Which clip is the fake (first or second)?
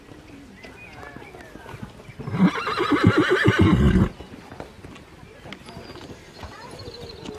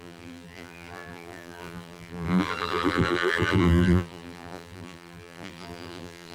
second